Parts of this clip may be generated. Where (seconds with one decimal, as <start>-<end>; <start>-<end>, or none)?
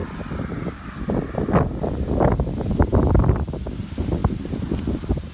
0.0-0.7